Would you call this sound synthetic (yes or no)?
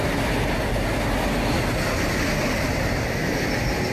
no